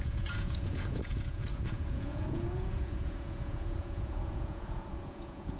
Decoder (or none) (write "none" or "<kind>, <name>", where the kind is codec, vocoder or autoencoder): vocoder, Vocos